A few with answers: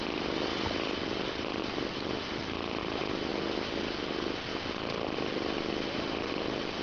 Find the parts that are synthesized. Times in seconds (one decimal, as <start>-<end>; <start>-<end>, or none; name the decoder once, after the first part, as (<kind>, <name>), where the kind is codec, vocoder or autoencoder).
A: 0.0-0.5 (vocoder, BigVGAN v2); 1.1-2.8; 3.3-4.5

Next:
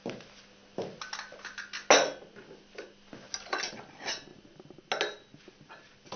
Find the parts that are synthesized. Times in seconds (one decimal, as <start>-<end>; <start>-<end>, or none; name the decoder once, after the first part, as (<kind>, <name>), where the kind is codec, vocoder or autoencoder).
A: none

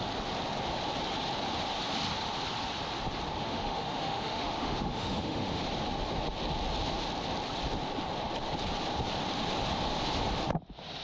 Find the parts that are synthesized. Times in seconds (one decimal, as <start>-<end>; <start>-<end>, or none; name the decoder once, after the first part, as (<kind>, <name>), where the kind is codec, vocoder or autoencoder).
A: 3.4-5.6 (autoencoder, DAC-VAE)

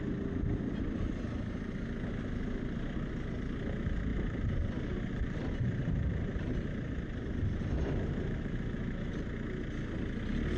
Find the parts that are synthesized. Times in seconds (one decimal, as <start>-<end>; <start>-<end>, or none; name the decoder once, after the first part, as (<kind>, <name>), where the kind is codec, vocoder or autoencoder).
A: 4.1-9.2 (vocoder, BigVGAN v2)